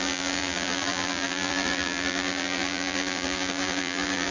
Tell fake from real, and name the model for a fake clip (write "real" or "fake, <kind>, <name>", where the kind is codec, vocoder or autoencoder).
fake, vocoder, BigVGAN v2